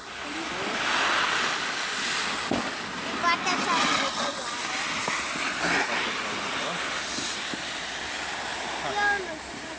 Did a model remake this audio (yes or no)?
no